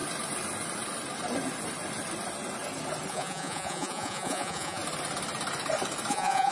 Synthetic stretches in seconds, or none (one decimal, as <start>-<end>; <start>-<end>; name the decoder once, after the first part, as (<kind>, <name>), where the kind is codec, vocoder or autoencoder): 3.1-4.8 (vocoder, Vocos); 6.1-6.5